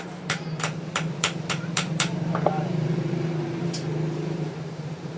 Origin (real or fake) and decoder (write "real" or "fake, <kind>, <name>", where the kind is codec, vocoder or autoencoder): fake, vocoder, BigVGAN v2